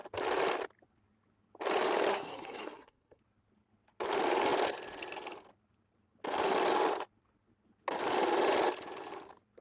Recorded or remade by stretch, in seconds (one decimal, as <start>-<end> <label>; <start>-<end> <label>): 0.0-2.1 recorded; 2.1-3.2 remade; 3.2-9.6 recorded